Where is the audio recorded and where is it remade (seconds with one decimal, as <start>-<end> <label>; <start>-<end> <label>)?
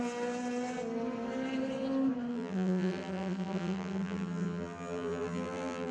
0.0-2.3 recorded; 2.3-5.9 remade